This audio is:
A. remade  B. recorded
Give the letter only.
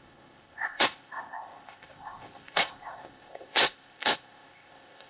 A